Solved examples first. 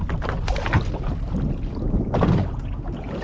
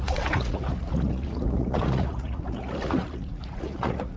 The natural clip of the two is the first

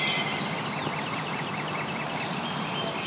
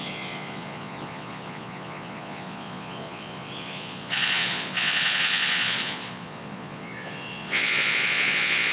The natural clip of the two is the first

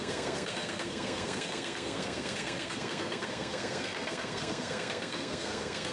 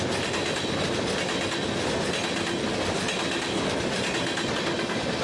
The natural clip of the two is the second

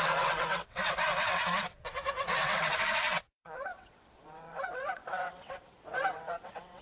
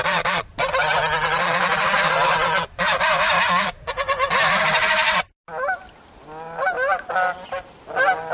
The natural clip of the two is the second